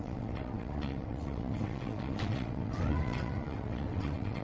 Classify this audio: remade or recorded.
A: remade